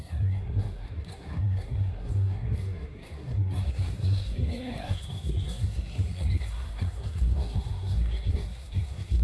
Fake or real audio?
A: fake